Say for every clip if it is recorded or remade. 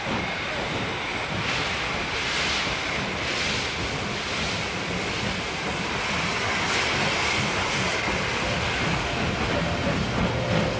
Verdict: recorded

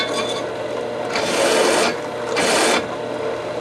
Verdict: recorded